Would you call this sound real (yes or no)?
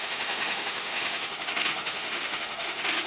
no